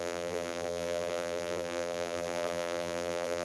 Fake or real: fake